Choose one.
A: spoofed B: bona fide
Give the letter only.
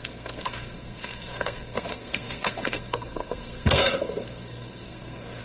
A